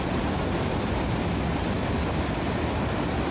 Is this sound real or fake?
real